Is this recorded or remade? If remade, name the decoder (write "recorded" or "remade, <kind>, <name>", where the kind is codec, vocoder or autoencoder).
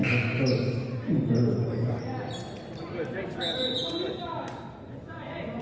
recorded